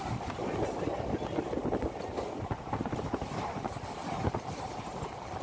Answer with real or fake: real